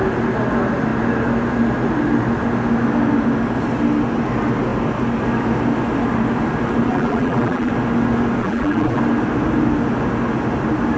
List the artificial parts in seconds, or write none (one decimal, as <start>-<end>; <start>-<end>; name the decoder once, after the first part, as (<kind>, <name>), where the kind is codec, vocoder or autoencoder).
6.9-7.7 (vocoder, BigVGAN v2); 8.4-9.0